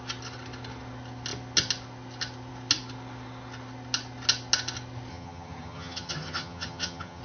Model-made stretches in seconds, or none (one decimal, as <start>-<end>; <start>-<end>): 5.1-7.2